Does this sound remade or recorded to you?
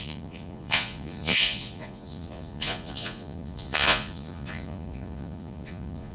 remade